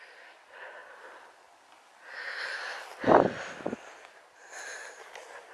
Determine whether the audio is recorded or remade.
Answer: recorded